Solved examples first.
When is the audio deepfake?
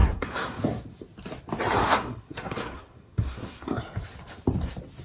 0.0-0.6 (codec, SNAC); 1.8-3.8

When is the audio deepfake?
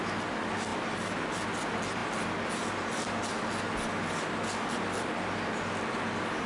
none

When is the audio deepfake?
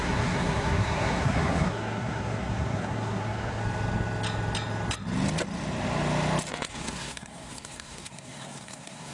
0.0-3.6 (codec, SNAC); 6.7-9.1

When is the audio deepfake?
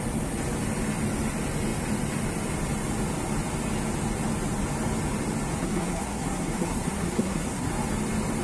5.6-7.7 (codec, SNAC)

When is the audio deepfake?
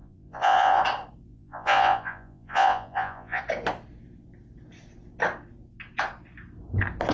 0.0-0.8 (vocoder, Vocos); 1.3-3.4